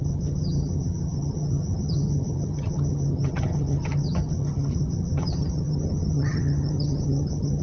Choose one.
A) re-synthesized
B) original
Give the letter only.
A